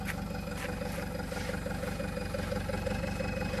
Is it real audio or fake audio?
real